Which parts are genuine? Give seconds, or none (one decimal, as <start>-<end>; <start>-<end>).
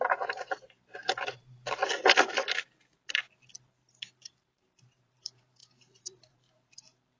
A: 1.8-4.4